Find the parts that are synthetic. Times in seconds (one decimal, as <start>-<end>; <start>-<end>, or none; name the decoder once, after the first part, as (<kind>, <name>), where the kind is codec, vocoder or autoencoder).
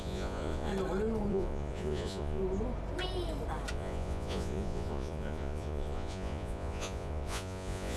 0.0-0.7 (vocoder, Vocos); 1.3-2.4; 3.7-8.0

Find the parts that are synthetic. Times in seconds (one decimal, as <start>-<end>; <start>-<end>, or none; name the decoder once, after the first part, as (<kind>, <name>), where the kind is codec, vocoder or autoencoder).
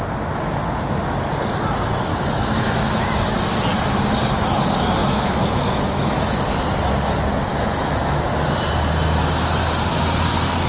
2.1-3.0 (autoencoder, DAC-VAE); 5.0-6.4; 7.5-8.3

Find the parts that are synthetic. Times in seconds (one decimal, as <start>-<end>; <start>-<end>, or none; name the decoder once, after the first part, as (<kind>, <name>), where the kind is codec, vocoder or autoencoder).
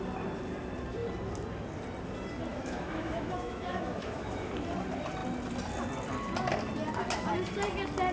2.5-4.5 (autoencoder, DAC-VAE)